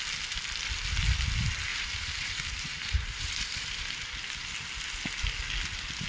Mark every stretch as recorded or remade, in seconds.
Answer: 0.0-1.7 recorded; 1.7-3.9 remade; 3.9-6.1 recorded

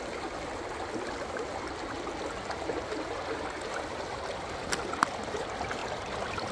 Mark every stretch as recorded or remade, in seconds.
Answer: 0.0-6.5 recorded

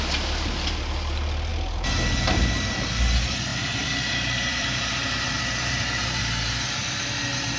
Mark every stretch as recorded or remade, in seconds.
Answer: 0.0-3.5 recorded; 3.5-6.2 remade; 6.2-7.6 recorded